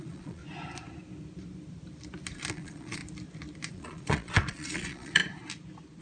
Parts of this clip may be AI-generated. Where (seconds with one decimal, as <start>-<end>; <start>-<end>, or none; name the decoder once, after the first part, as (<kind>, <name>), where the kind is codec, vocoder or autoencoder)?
0.0-0.4 (vocoder, Vocos); 2.5-3.0; 3.7-5.2

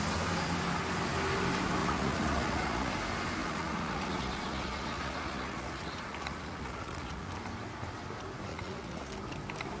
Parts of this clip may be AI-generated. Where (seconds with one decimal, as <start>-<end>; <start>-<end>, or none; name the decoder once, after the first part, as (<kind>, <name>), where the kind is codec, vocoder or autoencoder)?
1.8-2.9 (vocoder, Vocos); 3.4-7.3; 8.5-9.1

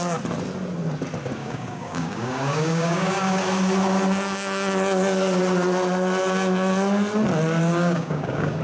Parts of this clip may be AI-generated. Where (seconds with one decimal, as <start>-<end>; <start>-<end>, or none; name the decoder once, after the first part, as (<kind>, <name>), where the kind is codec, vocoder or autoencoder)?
1.4-3.4 (codec, DAC); 7.7-8.6

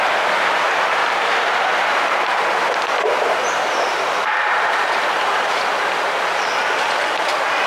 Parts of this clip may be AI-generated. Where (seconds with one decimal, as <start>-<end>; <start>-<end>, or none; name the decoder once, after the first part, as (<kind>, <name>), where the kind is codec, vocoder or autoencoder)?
1.0-5.1 (vocoder, BigVGAN v2)

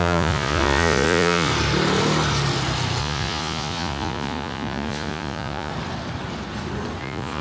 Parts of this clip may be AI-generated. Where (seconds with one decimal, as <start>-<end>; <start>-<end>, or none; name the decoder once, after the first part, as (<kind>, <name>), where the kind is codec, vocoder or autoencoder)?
0.0-1.5 (vocoder, Vocos); 3.0-5.7; 7.0-7.4

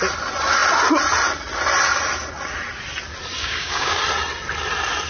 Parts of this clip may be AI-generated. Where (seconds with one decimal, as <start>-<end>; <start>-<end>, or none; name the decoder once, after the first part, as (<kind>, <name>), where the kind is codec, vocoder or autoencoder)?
3.4-4.0 (codec, DAC)